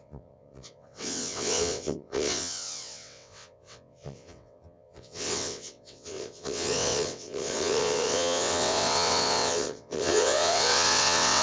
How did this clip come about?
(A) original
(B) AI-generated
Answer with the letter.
B